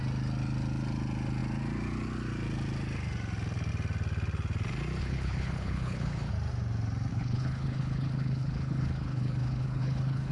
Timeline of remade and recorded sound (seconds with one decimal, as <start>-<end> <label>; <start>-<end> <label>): 0.0-5.0 recorded; 5.0-6.3 remade; 6.3-7.1 recorded; 7.1-10.3 remade